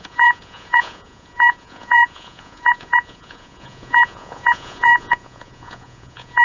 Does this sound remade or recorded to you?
remade